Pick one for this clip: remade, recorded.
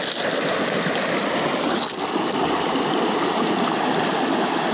recorded